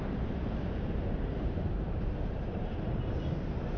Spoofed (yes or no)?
yes